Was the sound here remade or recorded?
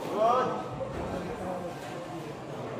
recorded